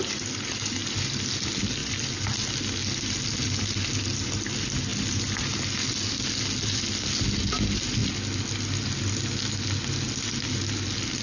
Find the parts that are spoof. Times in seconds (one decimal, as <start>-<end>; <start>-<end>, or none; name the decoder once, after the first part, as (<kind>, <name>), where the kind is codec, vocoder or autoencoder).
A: none